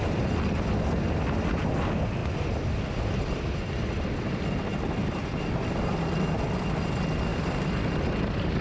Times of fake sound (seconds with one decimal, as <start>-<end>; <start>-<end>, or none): 2.2-4.4; 5.0-6.0; 7.3-8.0